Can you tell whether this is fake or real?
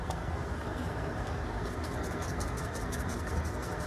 fake